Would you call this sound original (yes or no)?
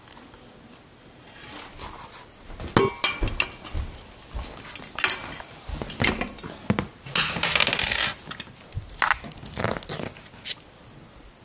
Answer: yes